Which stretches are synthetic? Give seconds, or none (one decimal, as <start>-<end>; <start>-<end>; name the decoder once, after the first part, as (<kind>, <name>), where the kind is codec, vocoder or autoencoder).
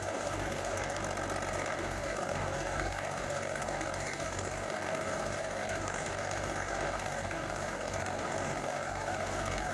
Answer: 0.0-1.0 (codec, DAC); 1.5-9.7